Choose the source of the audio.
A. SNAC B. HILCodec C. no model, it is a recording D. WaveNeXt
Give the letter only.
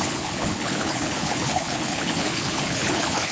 B